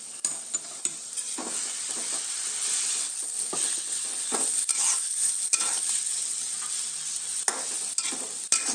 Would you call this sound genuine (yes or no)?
yes